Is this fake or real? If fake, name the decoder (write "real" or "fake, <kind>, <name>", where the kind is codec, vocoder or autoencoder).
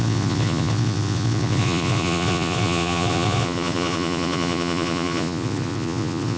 fake, vocoder, Vocos